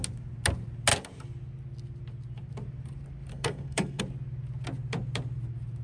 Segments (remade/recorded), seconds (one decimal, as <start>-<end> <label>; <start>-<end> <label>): 0.0-3.3 recorded; 3.3-4.0 remade; 4.0-5.8 recorded